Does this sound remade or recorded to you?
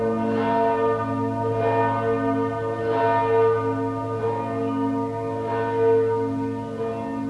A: recorded